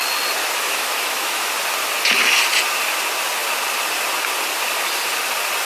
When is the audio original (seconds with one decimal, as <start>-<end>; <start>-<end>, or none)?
0.0-0.4; 1.5-5.6